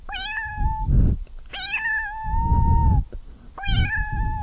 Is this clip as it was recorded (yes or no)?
yes